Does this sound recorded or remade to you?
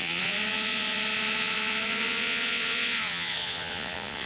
remade